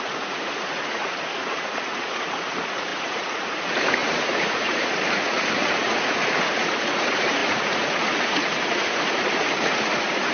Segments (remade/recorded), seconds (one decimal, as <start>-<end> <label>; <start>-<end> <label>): 0.0-10.3 remade